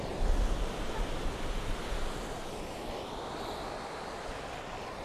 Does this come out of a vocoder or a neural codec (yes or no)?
no